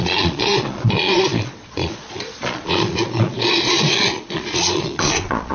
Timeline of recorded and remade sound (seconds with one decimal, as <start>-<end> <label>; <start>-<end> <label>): 0.0-5.5 remade